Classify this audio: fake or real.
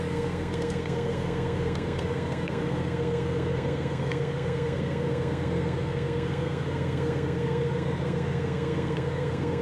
fake